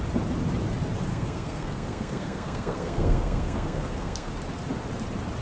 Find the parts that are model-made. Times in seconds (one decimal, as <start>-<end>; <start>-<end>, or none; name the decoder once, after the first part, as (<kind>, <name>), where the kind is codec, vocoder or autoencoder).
1.1-4.3 (codec, SNAC)